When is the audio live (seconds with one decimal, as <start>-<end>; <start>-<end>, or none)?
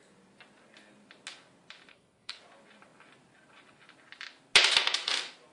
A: 0.0-1.9; 2.4-5.5